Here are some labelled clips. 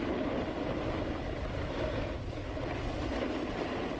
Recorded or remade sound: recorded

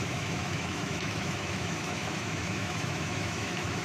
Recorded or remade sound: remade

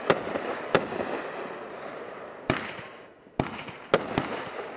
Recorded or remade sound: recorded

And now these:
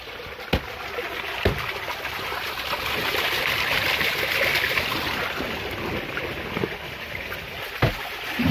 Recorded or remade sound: recorded